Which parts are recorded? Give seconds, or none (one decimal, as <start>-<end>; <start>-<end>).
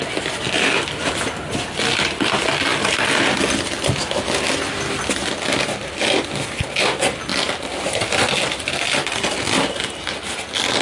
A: 0.0-10.8